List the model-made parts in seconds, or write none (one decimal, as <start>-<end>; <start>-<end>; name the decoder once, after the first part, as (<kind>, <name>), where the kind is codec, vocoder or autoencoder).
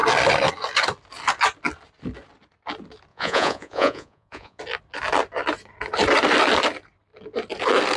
3.1-4.6 (vocoder, Vocos)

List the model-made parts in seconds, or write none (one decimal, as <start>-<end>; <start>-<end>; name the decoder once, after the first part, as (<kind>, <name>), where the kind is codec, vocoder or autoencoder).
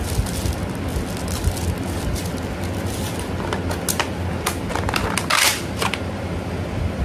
5.5-7.0 (vocoder, BigVGAN v2)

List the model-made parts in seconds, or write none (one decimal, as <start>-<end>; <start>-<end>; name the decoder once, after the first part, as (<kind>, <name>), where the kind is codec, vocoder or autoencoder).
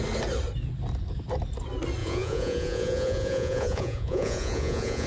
2.0-5.1 (vocoder, Vocos)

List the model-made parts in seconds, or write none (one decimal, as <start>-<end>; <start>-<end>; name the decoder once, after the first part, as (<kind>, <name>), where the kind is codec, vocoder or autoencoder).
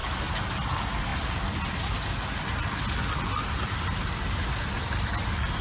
0.0-0.7 (vocoder, BigVGAN v2)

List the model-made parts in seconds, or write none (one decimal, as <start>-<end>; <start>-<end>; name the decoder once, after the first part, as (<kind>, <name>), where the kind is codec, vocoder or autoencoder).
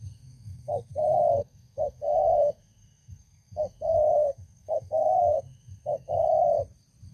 0.0-6.2 (codec, SNAC)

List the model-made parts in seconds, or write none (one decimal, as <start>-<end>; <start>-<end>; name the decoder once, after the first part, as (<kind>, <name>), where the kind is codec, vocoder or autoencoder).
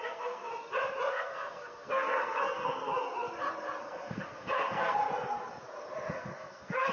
0.0-0.5 (codec, SNAC); 1.1-2.9; 3.8-5.0; 6.1-6.9